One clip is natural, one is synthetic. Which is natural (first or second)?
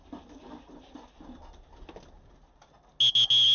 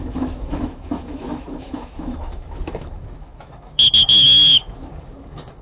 first